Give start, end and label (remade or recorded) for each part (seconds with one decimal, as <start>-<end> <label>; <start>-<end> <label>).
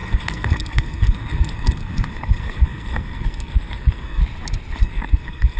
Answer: 0.0-4.2 remade; 4.2-4.8 recorded; 4.8-5.6 remade